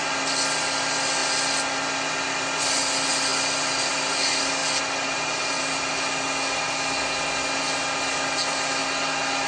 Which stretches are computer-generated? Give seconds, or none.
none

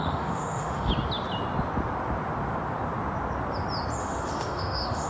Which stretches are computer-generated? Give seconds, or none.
0.0-0.9 (autoencoder, DAC-VAE); 4.0-5.1

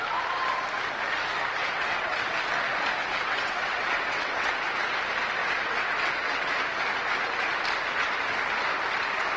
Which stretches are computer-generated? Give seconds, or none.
1.6-2.3 (vocoder, WaveNeXt); 3.0-4.5; 5.4-6.5